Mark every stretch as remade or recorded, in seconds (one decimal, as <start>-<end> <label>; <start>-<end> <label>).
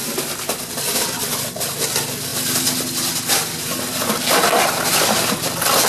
0.0-0.6 remade; 0.6-5.9 recorded